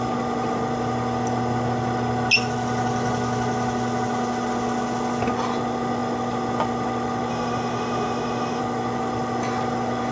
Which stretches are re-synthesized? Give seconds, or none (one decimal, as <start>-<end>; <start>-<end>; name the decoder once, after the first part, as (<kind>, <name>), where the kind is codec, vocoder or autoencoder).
7.3-8.6 (autoencoder, DAC-VAE)